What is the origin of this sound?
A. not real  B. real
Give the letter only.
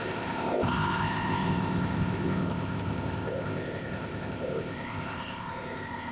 A